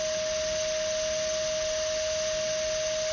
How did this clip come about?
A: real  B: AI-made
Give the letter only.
A